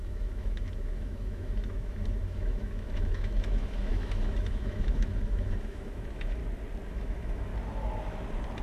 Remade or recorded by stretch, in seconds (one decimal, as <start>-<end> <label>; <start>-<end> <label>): 0.0-6.4 remade; 6.4-6.9 recorded; 6.9-7.5 remade; 7.5-8.6 recorded